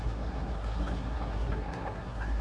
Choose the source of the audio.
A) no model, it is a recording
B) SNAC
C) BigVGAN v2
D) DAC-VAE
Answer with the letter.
B